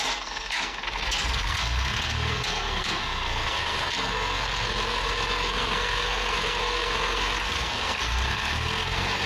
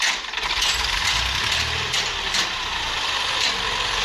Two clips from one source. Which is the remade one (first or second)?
first